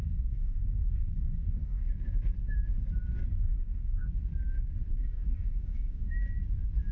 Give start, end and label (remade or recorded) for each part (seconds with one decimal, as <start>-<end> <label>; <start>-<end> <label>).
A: 0.0-1.9 remade; 1.9-3.3 recorded; 3.3-4.1 remade; 4.1-4.9 recorded; 4.9-6.1 remade; 6.1-6.9 recorded